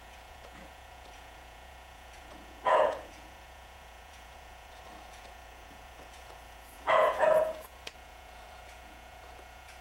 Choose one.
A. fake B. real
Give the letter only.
A